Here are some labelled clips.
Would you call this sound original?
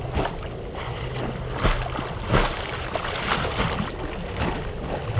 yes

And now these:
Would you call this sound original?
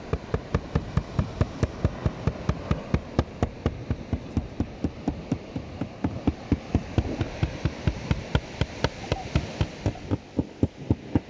yes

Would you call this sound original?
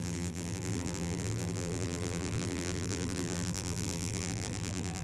no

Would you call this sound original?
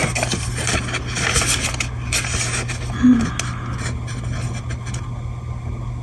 yes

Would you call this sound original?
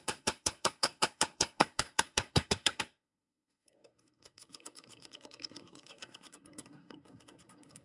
no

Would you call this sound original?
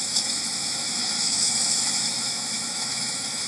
no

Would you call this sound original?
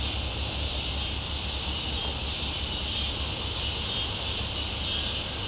yes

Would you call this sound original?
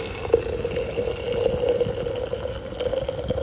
yes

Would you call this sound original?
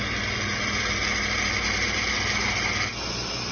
yes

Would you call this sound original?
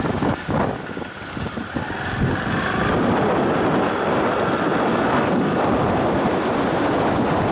yes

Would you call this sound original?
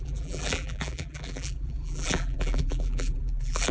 no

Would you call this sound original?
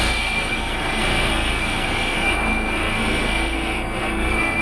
no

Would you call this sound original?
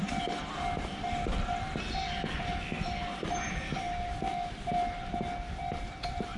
yes